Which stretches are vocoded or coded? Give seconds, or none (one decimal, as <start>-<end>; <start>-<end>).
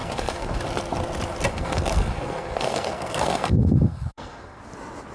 0.0-0.6; 1.5-4.6